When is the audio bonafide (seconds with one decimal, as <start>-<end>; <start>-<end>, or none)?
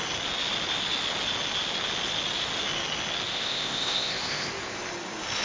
0.0-3.3; 4.5-5.4